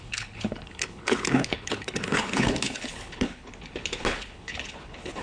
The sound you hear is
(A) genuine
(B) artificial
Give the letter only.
B